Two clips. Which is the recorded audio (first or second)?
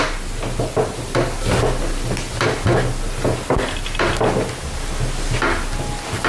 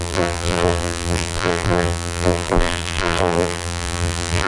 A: first